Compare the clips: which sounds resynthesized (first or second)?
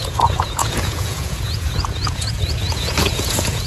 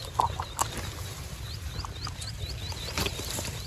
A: first